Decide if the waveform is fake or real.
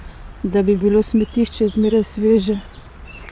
fake